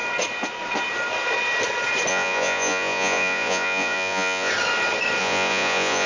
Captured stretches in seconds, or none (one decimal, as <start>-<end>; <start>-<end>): 0.0-2.1; 4.5-5.2